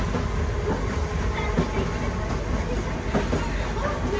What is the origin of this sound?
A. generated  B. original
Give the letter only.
B